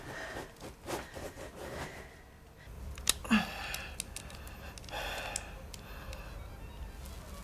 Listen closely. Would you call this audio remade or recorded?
recorded